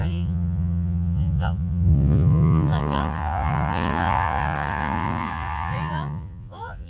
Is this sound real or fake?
fake